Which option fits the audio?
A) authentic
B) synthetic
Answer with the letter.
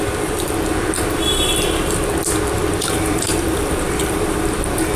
B